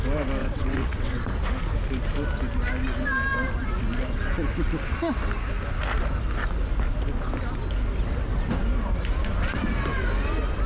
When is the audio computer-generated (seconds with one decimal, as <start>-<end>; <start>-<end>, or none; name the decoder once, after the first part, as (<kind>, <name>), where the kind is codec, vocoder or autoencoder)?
0.4-1.2 (vocoder, WaveNeXt)